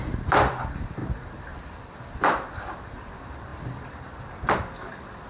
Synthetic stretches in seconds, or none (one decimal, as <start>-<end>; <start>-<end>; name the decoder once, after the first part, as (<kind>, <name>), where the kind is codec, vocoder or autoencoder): 0.0-1.0 (vocoder, BigVGAN v2); 3.1-5.3